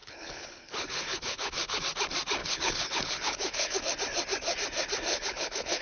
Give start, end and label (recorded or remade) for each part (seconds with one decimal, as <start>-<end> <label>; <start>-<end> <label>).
0.0-1.8 remade; 1.8-2.4 recorded; 2.4-3.8 remade; 3.8-5.1 recorded; 5.1-5.8 remade